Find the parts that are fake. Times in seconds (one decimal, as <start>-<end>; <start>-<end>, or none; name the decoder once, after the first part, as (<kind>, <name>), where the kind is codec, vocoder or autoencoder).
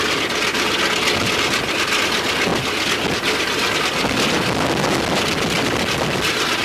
none